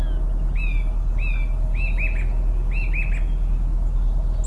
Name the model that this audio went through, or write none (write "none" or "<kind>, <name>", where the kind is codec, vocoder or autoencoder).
none